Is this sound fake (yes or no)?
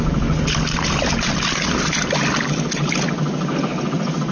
no